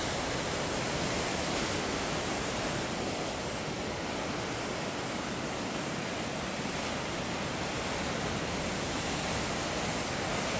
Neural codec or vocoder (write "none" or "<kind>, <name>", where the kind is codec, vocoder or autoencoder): none